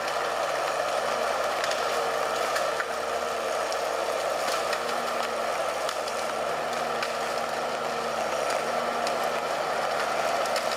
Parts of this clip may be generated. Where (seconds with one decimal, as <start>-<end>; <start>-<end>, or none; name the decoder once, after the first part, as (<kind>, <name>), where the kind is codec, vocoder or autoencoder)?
none